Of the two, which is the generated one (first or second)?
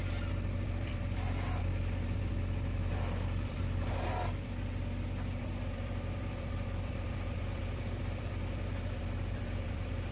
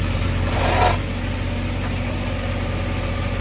first